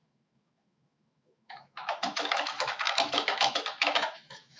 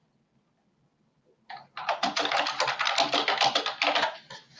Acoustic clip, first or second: second